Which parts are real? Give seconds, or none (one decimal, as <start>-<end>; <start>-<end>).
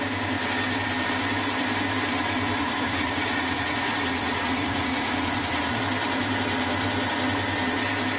0.0-2.6; 5.8-8.2